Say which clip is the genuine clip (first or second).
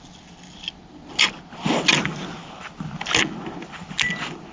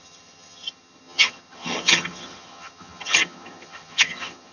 first